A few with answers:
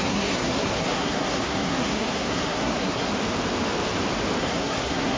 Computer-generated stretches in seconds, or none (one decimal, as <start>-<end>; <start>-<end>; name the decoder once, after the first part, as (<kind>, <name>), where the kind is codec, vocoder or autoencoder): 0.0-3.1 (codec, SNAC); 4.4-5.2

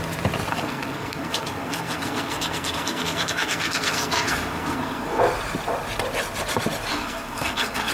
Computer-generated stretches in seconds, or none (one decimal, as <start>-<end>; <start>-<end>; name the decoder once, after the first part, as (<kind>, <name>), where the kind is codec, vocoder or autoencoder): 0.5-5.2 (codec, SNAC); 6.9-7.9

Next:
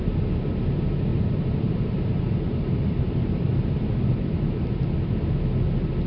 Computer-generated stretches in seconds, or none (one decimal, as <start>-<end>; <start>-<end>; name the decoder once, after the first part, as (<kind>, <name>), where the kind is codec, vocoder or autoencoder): 1.1-4.8 (vocoder, BigVGAN v2)

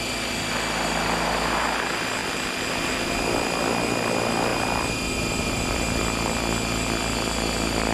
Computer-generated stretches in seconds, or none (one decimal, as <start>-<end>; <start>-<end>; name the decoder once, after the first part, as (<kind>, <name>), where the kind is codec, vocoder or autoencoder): none